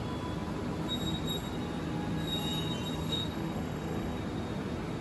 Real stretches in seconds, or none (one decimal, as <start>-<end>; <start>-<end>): 0.0-3.0; 4.2-5.0